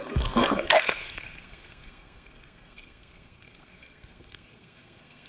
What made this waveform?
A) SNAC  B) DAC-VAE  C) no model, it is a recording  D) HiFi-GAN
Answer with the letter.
A